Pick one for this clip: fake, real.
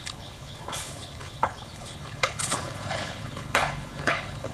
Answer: fake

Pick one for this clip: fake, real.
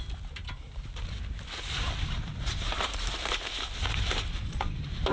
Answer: real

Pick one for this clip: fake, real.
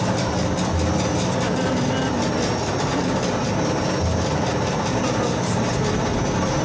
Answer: real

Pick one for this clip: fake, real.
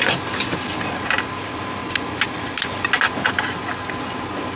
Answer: real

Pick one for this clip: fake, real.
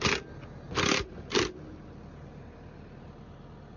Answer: real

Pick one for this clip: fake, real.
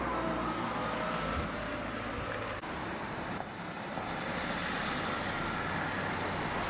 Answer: real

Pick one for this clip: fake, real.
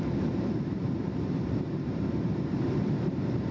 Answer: fake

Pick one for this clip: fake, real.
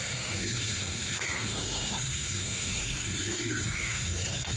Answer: fake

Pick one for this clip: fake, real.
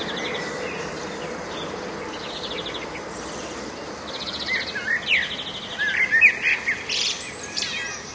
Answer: real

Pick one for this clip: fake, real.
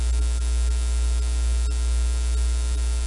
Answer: real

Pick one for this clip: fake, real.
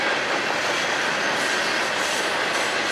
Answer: real